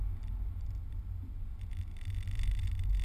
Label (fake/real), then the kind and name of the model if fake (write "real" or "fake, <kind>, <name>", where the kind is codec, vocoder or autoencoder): real